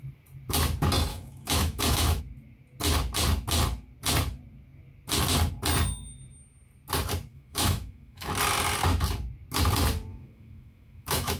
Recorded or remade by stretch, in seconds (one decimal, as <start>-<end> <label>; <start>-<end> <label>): 0.0-1.1 recorded; 1.1-2.2 remade; 2.2-7.3 recorded; 7.3-8.3 remade; 8.3-10.1 recorded; 10.1-11.4 remade